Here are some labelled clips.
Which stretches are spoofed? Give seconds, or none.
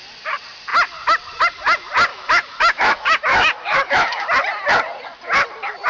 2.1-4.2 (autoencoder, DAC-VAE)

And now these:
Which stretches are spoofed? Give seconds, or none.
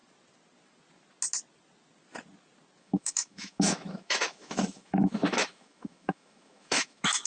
2.8-7.3 (autoencoder, DAC-VAE)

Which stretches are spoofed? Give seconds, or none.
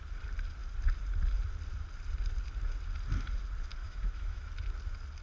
3.8-4.5 (autoencoder, DAC-VAE)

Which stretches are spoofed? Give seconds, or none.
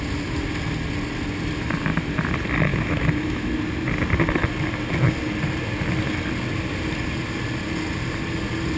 2.7-3.5 (autoencoder, DAC-VAE)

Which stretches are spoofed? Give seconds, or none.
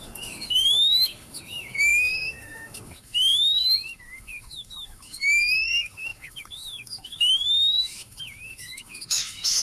0.0-9.6 (autoencoder, DAC-VAE)